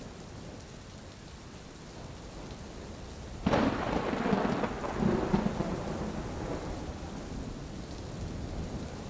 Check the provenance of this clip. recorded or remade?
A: recorded